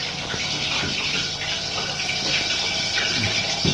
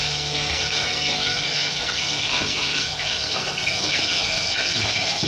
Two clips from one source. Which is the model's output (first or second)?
second